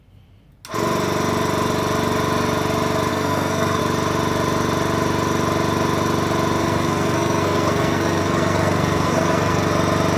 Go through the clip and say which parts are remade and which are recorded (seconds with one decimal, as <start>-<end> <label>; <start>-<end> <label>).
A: 0.0-3.1 recorded; 3.1-3.8 remade; 3.8-6.6 recorded; 6.6-9.7 remade; 9.7-10.2 recorded